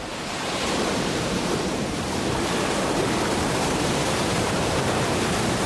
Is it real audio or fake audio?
fake